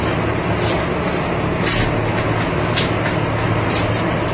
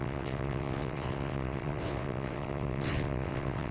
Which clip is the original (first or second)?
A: first